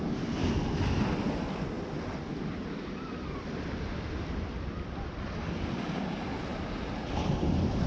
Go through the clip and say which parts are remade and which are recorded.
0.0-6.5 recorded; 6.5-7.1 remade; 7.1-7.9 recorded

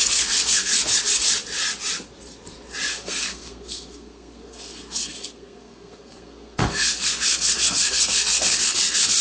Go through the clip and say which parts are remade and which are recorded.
0.0-0.7 remade; 0.7-2.9 recorded; 2.9-9.2 remade

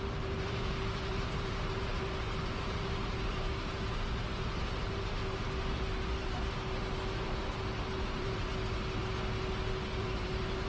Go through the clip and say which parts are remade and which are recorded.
0.0-5.2 remade; 5.2-8.0 recorded; 8.0-8.5 remade; 8.5-10.0 recorded; 10.0-10.7 remade

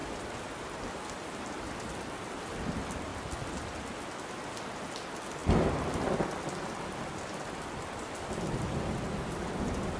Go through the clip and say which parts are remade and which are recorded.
0.0-2.4 remade; 2.4-3.1 recorded; 3.1-3.8 remade; 3.8-10.0 recorded